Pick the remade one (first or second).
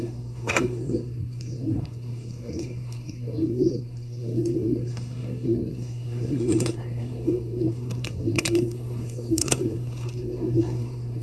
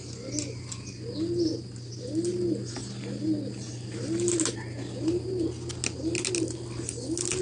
first